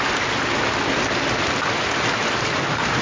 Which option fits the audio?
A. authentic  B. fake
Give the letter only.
A